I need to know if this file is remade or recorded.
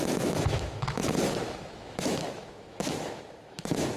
remade